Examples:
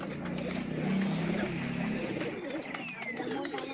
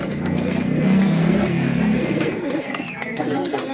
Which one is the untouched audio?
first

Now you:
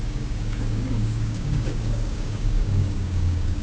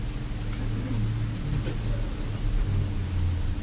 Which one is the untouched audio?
second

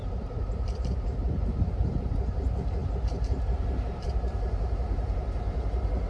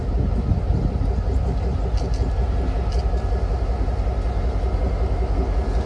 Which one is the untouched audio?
second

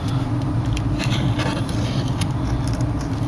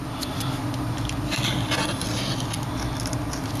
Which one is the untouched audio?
second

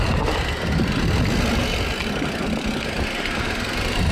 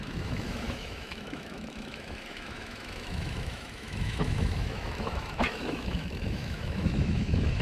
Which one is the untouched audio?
first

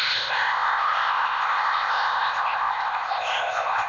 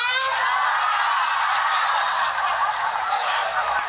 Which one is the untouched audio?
second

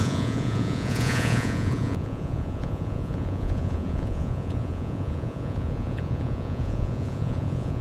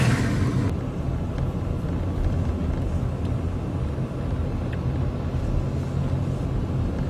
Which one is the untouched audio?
second